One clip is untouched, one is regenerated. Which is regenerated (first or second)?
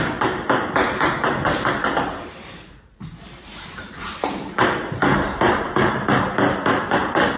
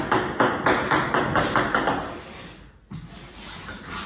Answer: first